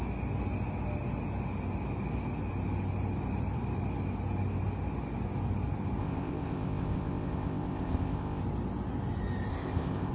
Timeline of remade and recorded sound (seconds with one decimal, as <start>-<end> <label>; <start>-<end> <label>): 0.0-6.0 recorded; 6.0-8.4 remade; 8.4-9.5 recorded; 9.5-10.1 remade